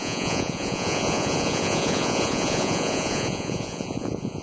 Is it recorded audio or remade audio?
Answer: remade